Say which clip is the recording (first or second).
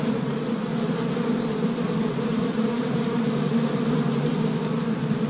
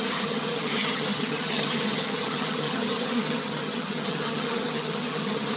first